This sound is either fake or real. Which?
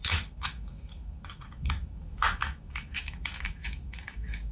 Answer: fake